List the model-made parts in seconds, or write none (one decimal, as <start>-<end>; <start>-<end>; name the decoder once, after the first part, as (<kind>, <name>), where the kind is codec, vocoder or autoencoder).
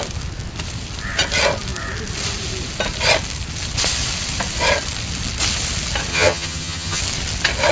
6.1-7.0 (vocoder, HiFi-GAN)